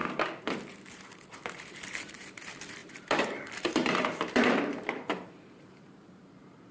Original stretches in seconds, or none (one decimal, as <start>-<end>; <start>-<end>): 0.0-0.5